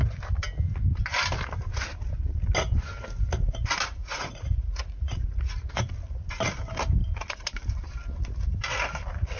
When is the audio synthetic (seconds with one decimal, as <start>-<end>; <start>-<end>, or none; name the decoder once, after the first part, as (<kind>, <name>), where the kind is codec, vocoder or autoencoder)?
4.0-5.8 (vocoder, Vocos)